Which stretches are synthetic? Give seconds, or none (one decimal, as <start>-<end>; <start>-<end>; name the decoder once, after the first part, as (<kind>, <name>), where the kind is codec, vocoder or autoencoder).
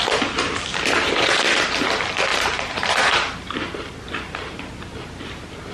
0.7-1.3 (vocoder, BigVGAN v2); 2.3-4.6